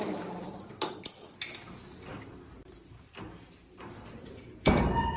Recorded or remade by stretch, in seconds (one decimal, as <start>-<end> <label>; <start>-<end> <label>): 0.0-2.1 recorded; 2.1-5.2 remade